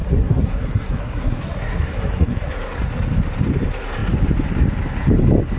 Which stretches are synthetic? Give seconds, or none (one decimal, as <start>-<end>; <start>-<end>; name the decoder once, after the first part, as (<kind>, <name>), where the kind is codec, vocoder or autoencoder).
0.0-2.5 (codec, SNAC)